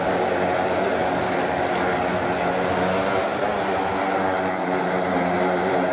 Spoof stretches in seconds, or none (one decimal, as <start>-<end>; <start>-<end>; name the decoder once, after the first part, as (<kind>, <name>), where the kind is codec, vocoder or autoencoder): none